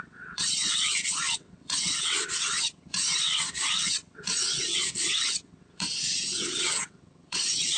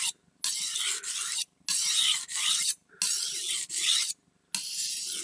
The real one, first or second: second